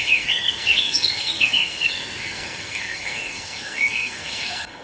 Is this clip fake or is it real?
fake